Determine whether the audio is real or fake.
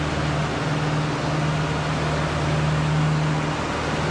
real